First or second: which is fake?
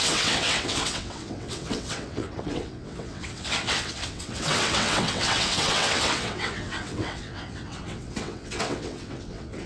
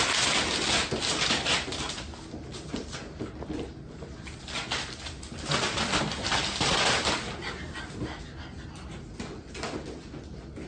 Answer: first